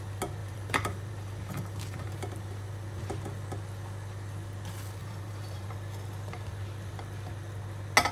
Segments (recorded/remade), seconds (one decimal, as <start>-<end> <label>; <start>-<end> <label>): 0.0-0.4 recorded; 0.4-2.1 remade; 2.1-5.0 recorded; 5.0-5.7 remade; 5.7-8.1 recorded